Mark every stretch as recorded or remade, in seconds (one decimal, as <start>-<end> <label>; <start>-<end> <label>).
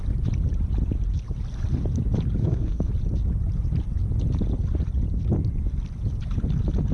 0.0-2.4 recorded; 2.4-2.9 remade; 2.9-6.9 recorded